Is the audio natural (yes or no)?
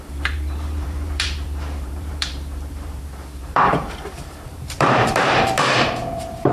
no